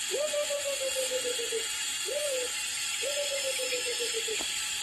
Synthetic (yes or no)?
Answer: no